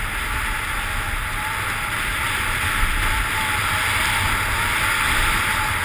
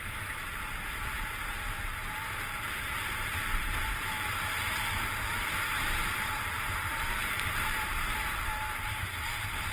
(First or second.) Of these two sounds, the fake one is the second